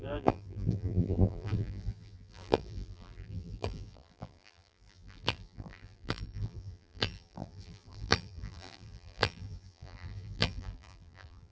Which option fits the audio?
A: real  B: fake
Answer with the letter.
B